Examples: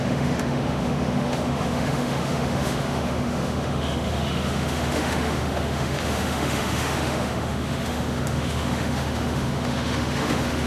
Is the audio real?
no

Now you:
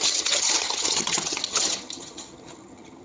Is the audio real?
no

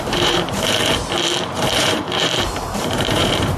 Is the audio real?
no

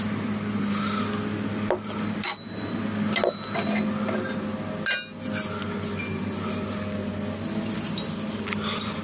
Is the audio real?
yes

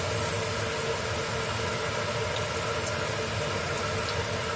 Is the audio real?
yes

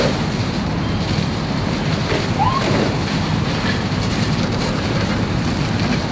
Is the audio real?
no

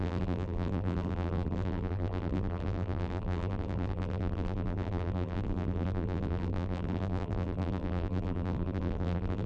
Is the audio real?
no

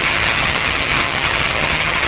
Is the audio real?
no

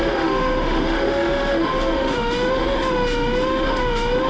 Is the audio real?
no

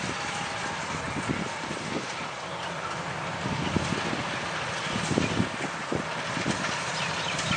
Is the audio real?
yes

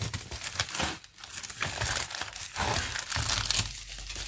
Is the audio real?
yes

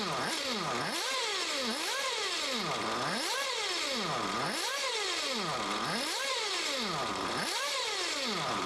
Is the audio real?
yes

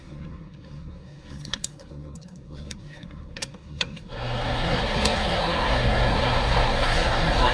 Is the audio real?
no